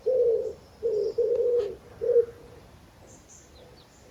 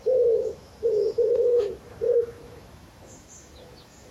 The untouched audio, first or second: first